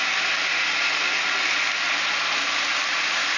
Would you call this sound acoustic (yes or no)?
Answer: yes